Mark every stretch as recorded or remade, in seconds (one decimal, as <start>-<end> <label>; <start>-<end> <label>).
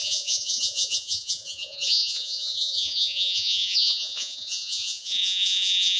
0.0-6.0 remade